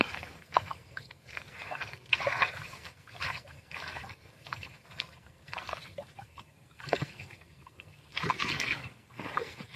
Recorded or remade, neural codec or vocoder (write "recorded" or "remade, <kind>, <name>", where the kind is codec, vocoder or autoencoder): remade, codec, SNAC